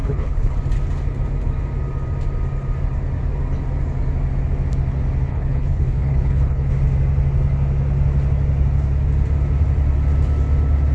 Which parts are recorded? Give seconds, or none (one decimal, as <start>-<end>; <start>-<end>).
0.6-5.3; 6.7-10.9